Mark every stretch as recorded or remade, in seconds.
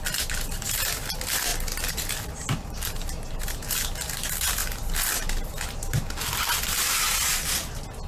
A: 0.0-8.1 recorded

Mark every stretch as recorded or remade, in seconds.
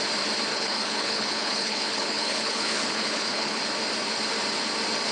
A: 0.0-0.5 recorded; 0.5-3.6 remade; 3.6-5.1 recorded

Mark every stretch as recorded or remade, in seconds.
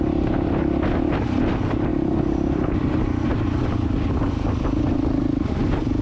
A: 0.0-6.0 recorded